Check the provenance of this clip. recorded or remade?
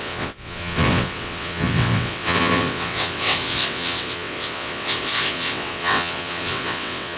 remade